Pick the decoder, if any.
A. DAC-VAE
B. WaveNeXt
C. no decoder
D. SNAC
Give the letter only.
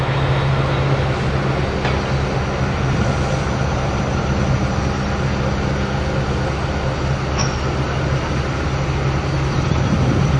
C